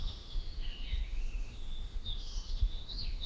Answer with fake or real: fake